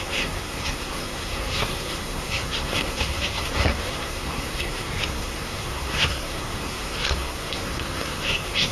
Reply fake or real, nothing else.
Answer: fake